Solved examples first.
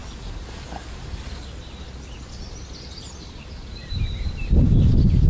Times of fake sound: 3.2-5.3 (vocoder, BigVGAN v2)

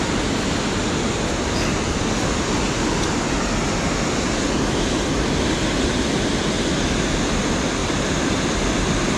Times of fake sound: 7.8-8.3 (vocoder, BigVGAN v2)